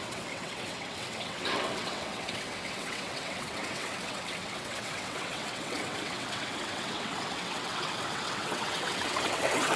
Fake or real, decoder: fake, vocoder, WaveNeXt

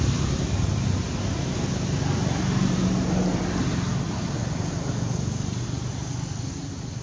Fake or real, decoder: real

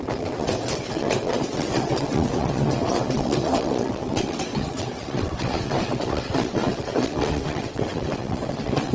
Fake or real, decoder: fake, vocoder, WaveNeXt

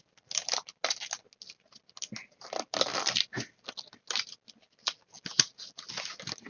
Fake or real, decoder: real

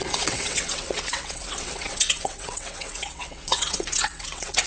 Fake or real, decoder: fake, vocoder, WaveNeXt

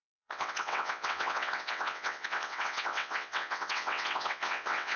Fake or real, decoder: fake, vocoder, WaveNeXt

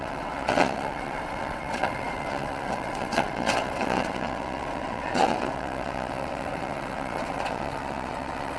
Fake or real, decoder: fake, vocoder, WaveNeXt